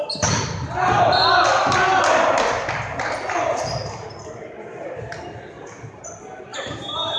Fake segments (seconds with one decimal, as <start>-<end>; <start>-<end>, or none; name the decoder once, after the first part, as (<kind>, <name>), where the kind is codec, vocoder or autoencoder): none